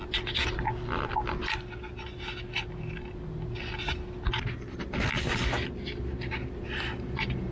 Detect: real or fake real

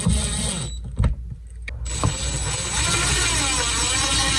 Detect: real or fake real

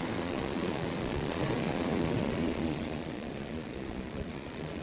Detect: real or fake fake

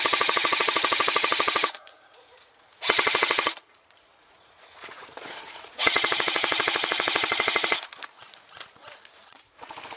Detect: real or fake fake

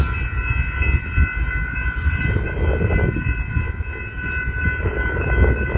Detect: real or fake real